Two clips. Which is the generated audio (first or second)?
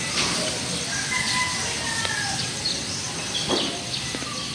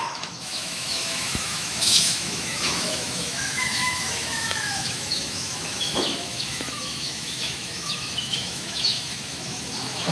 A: second